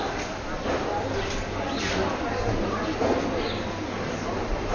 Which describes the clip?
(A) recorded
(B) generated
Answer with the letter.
A